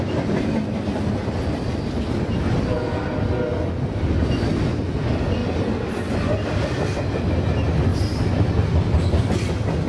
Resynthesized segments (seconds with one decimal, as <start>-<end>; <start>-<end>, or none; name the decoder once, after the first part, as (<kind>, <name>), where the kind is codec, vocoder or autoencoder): none

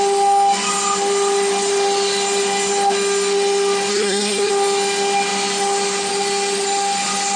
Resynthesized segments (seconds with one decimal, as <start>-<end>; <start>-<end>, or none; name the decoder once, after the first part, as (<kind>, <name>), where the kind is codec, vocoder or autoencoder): 3.9-4.5 (codec, SNAC)

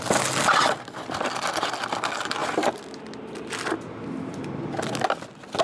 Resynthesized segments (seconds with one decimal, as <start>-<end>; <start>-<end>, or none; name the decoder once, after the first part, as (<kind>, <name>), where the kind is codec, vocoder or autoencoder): none

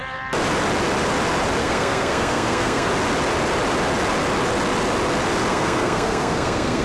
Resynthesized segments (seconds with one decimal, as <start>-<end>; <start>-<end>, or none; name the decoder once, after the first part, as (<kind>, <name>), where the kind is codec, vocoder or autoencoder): 1.6-2.9 (codec, SNAC); 5.5-6.8